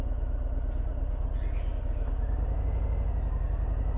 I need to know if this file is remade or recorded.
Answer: recorded